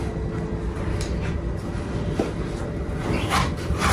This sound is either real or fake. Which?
real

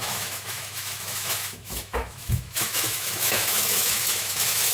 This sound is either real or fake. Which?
fake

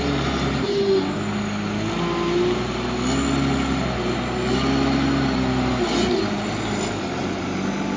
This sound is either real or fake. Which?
real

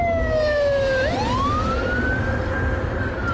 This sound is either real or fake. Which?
real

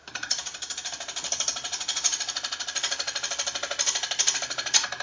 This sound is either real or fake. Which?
real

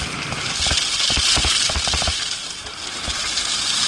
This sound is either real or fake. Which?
real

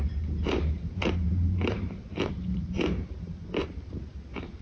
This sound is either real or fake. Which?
fake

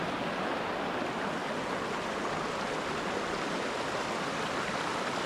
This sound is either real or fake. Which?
real